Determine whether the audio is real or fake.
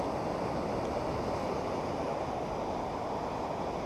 real